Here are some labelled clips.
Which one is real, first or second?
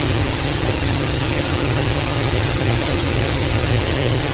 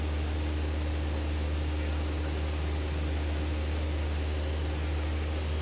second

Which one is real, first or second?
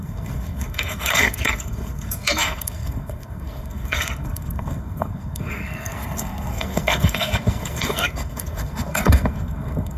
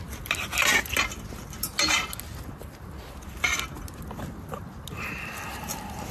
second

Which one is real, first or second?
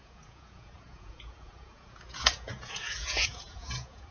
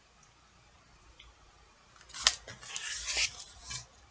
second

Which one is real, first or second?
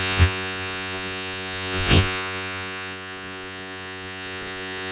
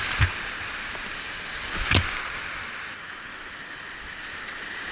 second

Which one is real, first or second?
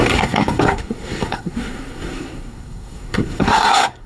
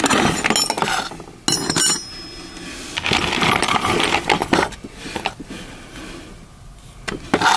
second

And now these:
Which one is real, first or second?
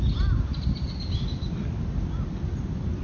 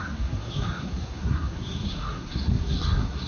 first